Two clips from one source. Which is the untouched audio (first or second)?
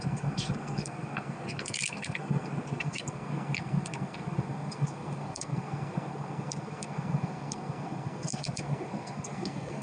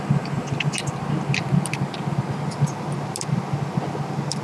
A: second